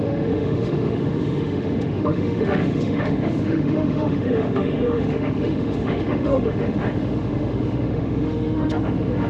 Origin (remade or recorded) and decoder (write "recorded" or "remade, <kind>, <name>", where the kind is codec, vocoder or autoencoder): remade, autoencoder, DAC-VAE